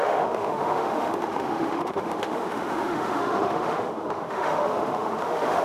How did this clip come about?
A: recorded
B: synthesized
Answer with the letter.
B